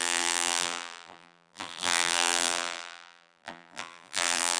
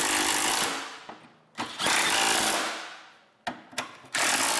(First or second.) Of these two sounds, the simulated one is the first